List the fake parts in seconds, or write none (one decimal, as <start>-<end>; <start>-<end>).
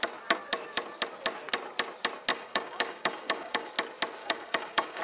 2.3-3.7; 4.2-5.0